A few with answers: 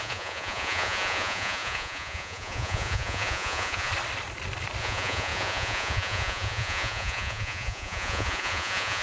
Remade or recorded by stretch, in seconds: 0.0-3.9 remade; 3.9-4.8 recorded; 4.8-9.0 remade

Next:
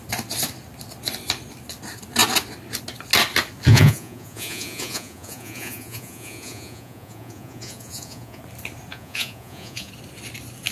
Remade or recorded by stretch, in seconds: 0.0-3.7 recorded; 3.7-8.4 remade; 8.4-8.9 recorded; 8.9-9.9 remade; 9.9-10.7 recorded

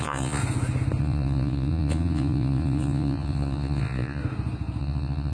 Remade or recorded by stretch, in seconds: 0.0-0.4 remade; 0.4-1.0 recorded; 1.0-4.2 remade; 4.2-4.8 recorded; 4.8-5.3 remade

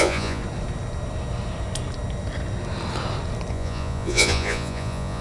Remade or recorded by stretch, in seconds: 0.0-0.4 remade; 0.4-3.5 recorded; 3.5-5.2 remade

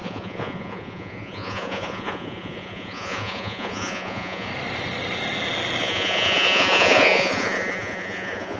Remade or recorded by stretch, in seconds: 0.0-4.5 remade; 4.5-5.8 recorded; 5.8-8.6 remade

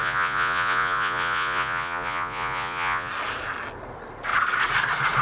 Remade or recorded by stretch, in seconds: 0.0-3.1 remade; 3.1-5.2 recorded